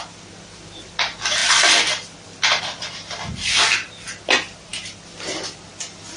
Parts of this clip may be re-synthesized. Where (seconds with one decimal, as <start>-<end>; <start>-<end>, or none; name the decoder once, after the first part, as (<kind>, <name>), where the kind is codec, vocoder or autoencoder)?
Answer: none